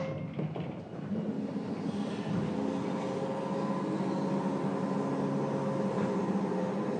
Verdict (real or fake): real